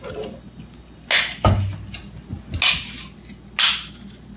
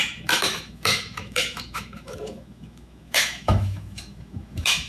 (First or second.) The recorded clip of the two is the first